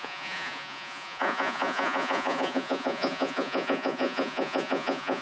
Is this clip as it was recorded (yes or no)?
no